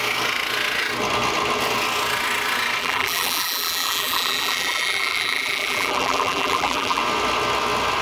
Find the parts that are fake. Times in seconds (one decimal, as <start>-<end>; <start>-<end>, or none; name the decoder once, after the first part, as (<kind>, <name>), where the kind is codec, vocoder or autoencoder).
2.8-7.0 (vocoder, BigVGAN v2)